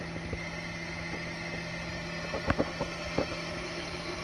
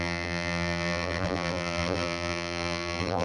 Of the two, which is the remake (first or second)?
second